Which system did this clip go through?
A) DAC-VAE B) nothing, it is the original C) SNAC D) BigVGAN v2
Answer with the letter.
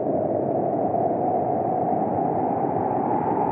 D